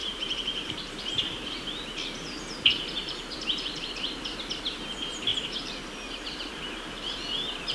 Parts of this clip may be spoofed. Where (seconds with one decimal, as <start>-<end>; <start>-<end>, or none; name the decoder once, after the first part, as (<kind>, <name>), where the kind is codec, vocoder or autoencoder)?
0.0-0.9 (vocoder, BigVGAN v2); 3.0-4.1; 5.3-7.2